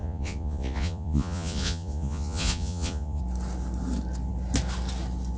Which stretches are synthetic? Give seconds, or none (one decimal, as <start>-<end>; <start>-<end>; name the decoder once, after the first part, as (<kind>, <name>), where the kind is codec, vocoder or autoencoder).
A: 0.0-3.2 (vocoder, Vocos)